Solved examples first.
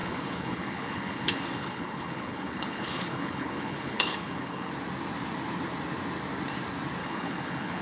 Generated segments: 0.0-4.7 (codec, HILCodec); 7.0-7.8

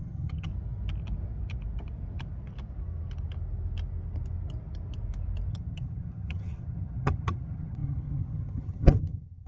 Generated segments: 0.0-0.5 (vocoder, HiFi-GAN); 5.5-9.5

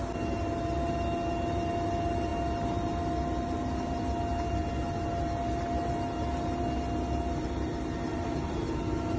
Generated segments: 8.1-8.7 (vocoder, BigVGAN v2)

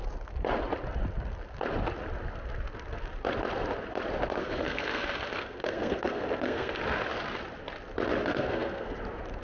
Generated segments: 4.4-6.8 (codec, SNAC); 8.2-9.0

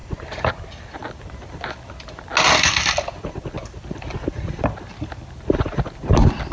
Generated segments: 0.0-0.5 (vocoder, BigVGAN v2)